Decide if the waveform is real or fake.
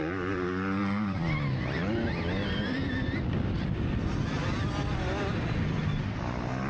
real